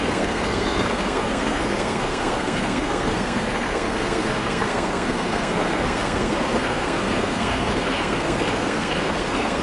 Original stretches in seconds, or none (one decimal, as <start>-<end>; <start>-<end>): none